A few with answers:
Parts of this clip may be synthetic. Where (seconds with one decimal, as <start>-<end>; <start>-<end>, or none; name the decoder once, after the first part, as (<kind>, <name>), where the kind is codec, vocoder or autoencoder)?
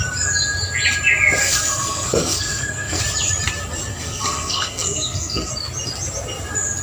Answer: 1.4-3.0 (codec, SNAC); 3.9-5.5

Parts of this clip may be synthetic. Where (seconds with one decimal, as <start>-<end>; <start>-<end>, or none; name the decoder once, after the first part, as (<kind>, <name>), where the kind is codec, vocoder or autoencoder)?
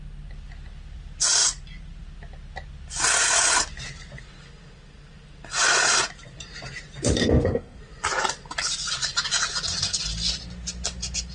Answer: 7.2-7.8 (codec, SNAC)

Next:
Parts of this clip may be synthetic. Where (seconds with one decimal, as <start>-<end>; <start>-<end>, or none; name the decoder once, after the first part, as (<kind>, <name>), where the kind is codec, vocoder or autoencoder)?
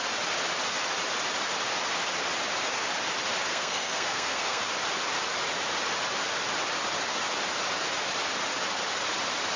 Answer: 3.5-4.6 (codec, SNAC)